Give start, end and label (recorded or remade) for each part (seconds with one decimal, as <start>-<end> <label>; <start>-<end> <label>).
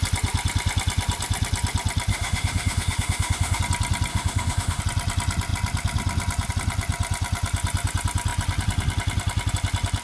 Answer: 0.0-2.1 recorded; 2.1-3.6 remade; 3.6-4.1 recorded; 4.1-4.8 remade; 4.8-10.0 recorded